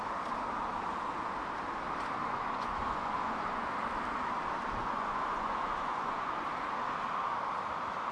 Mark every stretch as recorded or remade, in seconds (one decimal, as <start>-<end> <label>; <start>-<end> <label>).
0.0-2.2 recorded; 2.2-3.7 remade; 3.7-4.8 recorded; 4.8-6.4 remade; 6.4-8.1 recorded